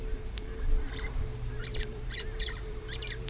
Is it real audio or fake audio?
fake